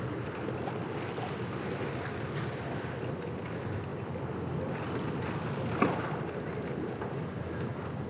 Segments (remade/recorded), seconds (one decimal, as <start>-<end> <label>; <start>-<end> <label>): 0.0-8.1 recorded